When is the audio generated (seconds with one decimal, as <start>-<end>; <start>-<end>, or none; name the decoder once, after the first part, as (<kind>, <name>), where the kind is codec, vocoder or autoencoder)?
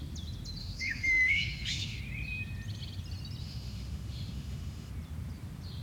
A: 0.6-2.0 (autoencoder, DAC-VAE); 3.4-4.9